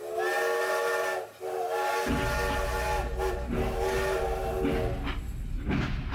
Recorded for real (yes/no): yes